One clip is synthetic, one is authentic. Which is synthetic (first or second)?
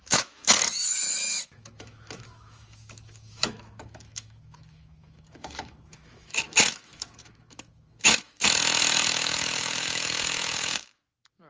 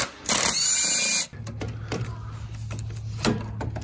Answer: first